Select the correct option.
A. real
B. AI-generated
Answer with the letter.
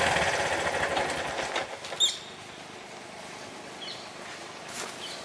A